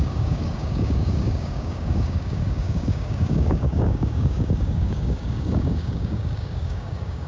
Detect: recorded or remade remade